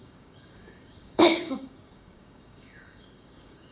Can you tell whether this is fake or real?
fake